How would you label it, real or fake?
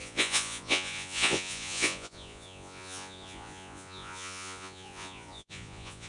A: fake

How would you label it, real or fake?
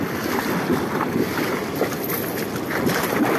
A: real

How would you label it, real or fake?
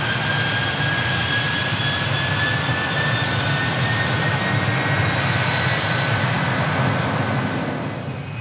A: real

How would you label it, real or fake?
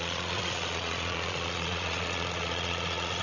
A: fake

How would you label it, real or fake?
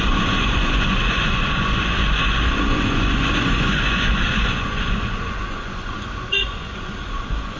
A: fake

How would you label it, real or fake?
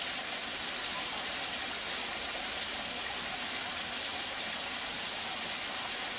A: real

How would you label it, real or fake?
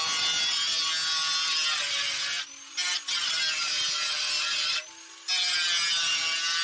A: real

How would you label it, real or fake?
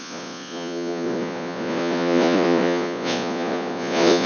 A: fake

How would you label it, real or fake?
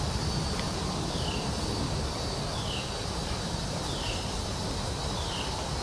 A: real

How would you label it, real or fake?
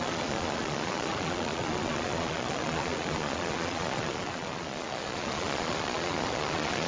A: fake